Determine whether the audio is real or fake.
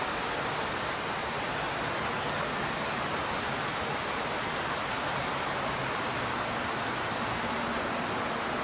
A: real